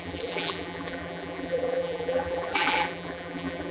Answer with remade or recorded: remade